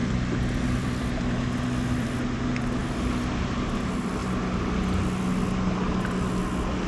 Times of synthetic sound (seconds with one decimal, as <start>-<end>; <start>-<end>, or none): 0.0-1.1